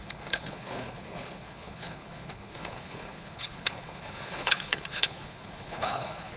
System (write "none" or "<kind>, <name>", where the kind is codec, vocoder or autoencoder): codec, HILCodec